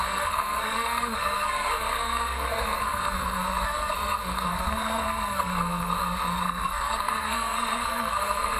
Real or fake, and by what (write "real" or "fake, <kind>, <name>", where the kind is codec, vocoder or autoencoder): fake, codec, SNAC